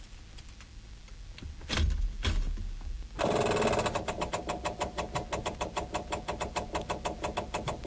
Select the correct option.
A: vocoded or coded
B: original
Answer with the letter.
B